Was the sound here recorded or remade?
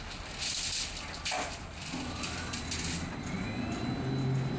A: recorded